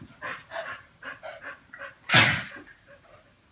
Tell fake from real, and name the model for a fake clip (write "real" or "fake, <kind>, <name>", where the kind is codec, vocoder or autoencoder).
real